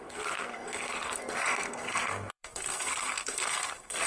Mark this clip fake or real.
fake